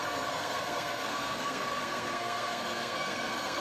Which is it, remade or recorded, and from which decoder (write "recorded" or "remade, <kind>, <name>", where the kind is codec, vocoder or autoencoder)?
remade, codec, SNAC